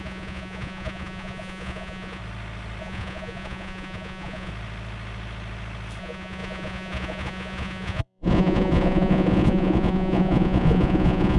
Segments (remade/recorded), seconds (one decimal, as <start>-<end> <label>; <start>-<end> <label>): 0.0-2.2 remade; 2.2-2.8 recorded; 2.8-4.5 remade; 4.5-6.0 recorded; 6.0-11.4 remade